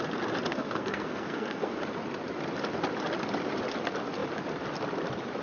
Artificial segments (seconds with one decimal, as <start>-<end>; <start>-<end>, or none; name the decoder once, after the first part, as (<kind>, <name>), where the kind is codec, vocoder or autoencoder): 0.5-1.7 (codec, SNAC)